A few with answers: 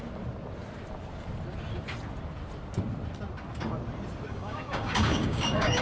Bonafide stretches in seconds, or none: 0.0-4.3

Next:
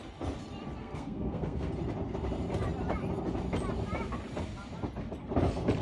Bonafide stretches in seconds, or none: 0.0-0.8; 1.7-5.8

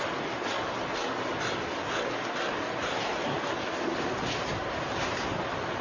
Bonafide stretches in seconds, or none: 0.0-5.8

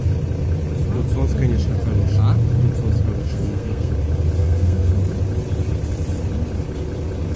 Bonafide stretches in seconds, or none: 0.0-3.2; 3.9-4.4; 4.9-7.4

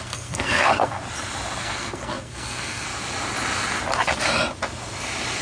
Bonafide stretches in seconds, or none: 1.0-1.6; 2.9-5.4

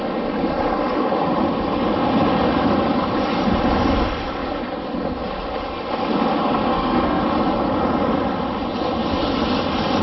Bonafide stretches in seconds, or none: 0.0-6.7; 7.2-10.0

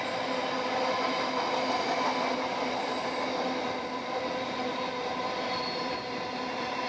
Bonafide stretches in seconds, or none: 0.0-6.9